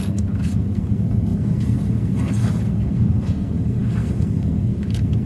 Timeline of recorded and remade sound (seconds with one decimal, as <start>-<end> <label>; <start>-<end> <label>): 0.0-5.3 remade